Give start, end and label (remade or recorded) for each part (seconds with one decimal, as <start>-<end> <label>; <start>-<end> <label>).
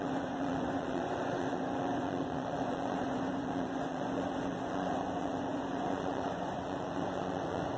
0.0-7.8 remade